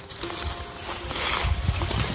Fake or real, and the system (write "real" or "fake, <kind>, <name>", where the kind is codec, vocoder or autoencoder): real